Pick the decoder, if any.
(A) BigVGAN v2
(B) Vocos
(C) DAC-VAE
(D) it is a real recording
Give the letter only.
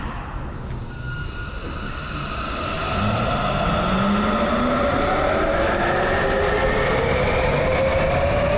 D